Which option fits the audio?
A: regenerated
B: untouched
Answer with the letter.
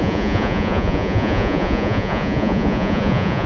A